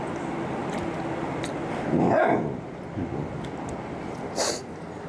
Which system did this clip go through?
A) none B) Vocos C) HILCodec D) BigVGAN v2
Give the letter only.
A